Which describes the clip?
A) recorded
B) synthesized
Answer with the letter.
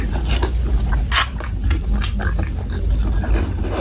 A